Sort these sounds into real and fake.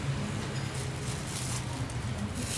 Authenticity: real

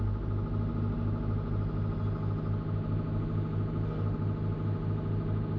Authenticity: real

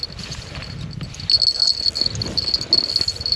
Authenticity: real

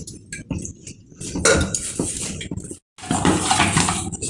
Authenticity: real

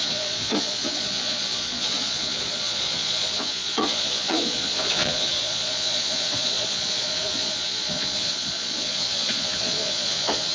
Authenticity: fake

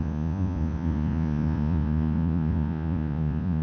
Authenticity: fake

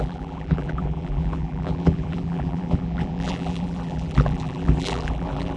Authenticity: fake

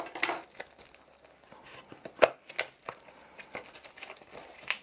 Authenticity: real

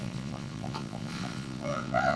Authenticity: fake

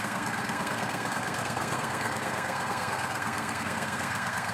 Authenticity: fake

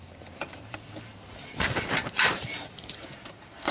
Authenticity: fake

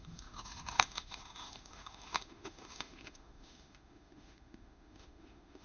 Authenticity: fake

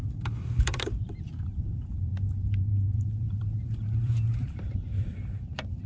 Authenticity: fake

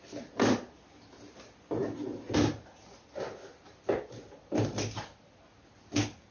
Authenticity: real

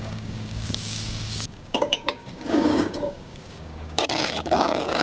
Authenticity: fake